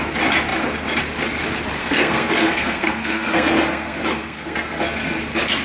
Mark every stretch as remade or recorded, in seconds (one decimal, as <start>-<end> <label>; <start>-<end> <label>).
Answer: 0.0-1.8 recorded; 1.8-4.8 remade; 4.8-5.6 recorded